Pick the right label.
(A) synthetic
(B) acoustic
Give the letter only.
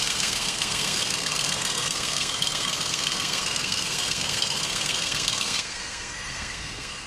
A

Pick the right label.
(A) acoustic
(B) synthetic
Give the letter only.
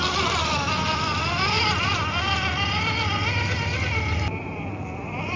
A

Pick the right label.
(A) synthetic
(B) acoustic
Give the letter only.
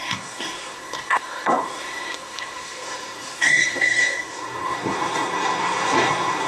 A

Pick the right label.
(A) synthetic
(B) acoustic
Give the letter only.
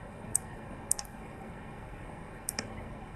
A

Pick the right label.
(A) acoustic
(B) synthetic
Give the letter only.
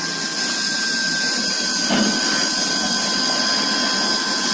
A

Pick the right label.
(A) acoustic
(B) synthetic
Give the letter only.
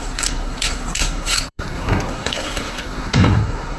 B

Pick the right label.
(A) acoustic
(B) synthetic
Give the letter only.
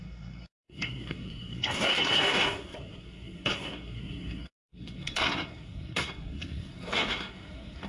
B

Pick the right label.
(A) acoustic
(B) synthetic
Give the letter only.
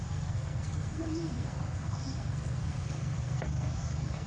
B